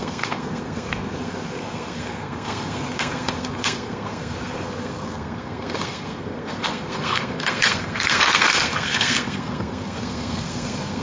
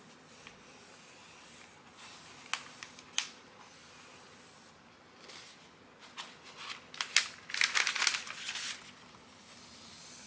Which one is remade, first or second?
first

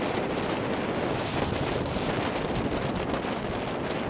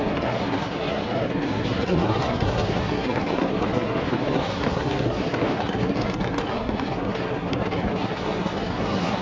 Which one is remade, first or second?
second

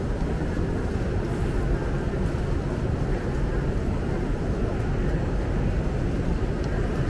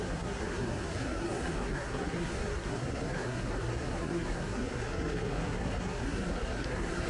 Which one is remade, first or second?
second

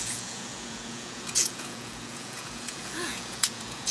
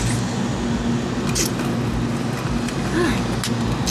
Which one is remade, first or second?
first